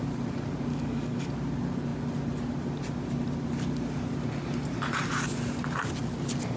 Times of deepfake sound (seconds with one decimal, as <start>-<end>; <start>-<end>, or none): 0.7-1.3